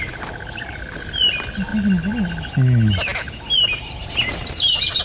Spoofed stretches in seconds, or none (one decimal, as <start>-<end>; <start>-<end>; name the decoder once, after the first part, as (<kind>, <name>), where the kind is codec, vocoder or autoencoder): 4.0-5.0 (vocoder, BigVGAN v2)